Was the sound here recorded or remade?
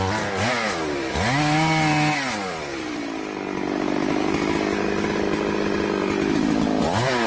recorded